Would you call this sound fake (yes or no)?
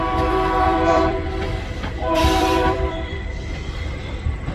yes